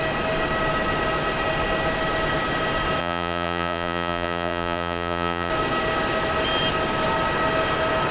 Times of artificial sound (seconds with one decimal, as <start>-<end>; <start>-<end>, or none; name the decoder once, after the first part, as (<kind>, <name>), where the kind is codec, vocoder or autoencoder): 3.0-5.5 (vocoder, BigVGAN v2)